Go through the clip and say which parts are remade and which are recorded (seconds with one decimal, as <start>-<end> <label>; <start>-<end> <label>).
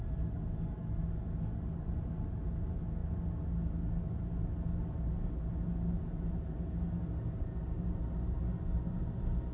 0.0-9.5 recorded